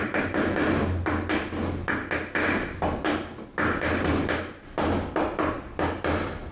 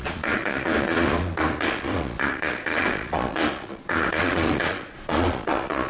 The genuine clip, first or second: first